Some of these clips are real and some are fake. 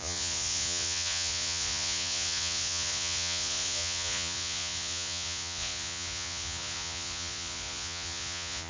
fake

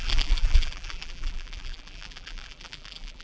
fake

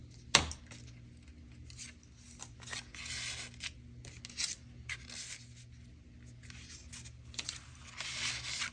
real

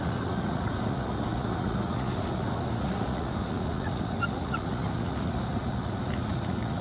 fake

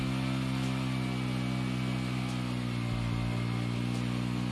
real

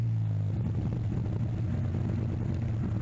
real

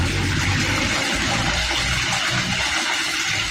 fake